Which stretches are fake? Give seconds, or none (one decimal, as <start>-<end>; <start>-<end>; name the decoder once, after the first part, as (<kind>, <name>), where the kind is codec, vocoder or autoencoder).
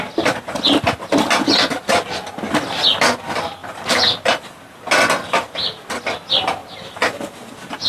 none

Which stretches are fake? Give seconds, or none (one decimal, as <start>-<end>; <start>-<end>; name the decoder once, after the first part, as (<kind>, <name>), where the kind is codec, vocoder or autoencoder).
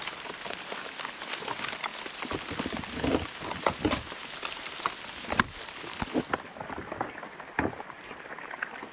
none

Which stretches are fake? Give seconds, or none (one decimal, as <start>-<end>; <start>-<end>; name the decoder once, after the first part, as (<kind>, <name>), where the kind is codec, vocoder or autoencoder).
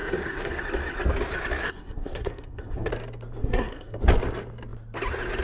0.0-0.6 (codec, SNAC); 1.6-2.9; 3.4-4.0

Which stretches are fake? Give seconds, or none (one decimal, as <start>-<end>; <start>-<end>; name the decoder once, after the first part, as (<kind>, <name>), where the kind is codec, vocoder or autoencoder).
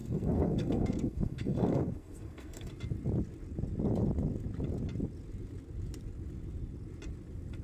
0.0-2.7 (codec, SNAC)